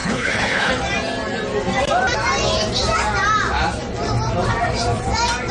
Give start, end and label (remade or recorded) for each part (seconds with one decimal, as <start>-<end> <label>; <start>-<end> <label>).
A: 0.0-0.7 remade; 0.7-5.5 recorded